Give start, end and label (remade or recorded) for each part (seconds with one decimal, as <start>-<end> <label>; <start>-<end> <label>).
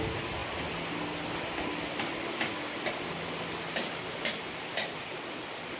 0.0-5.8 recorded